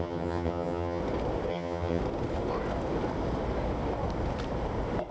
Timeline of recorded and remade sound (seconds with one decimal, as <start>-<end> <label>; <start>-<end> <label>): 0.0-1.0 remade; 1.0-1.5 recorded; 1.5-2.0 remade; 2.0-5.1 recorded